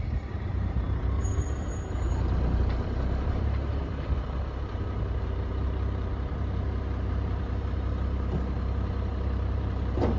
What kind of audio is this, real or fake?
fake